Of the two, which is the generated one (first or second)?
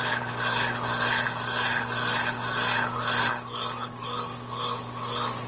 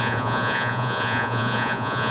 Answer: second